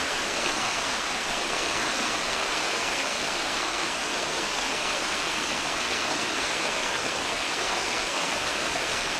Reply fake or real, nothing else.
fake